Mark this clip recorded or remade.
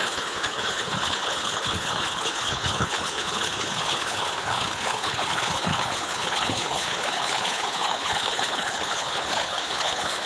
remade